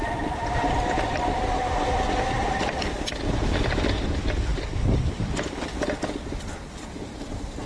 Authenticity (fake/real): real